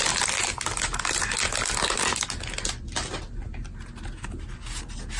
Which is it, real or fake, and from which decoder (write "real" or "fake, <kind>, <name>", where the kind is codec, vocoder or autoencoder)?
real